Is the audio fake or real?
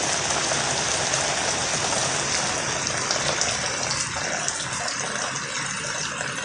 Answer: real